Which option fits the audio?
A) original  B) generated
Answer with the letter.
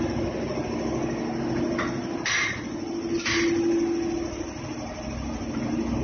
A